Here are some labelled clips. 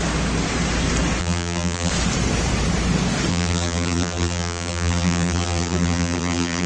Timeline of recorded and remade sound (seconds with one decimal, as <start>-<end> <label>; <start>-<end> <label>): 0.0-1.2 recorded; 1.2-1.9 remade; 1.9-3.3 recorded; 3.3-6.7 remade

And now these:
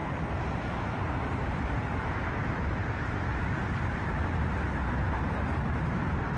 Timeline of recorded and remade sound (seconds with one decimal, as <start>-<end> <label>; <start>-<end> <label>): 0.0-6.4 remade

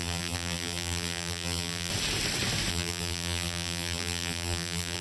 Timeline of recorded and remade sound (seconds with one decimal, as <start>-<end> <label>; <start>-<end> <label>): 0.0-1.9 remade; 1.9-2.7 recorded; 2.7-5.0 remade